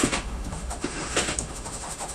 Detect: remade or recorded remade